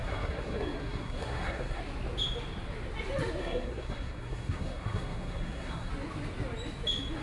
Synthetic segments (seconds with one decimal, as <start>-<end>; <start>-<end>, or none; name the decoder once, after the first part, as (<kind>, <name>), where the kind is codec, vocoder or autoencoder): 0.0-1.8 (codec, SNAC); 3.4-5.9

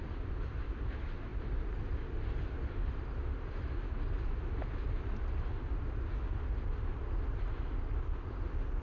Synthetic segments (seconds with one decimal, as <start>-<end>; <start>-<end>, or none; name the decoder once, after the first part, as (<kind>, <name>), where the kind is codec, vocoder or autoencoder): none

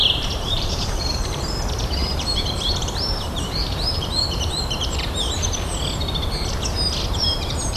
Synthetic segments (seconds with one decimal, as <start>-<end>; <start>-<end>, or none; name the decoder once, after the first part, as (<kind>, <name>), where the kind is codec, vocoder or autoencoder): 0.0-5.7 (vocoder, BigVGAN v2); 7.1-7.8

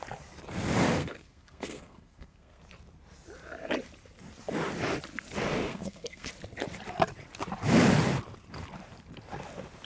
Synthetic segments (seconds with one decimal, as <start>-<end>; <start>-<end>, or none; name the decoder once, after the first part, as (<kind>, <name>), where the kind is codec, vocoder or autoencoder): 1.0-2.6 (codec, SNAC); 5.7-6.3